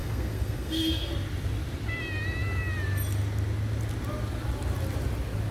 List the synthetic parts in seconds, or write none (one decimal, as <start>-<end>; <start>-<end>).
0.0-1.1